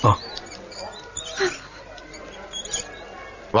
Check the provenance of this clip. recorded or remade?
recorded